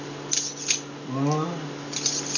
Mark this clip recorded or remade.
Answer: recorded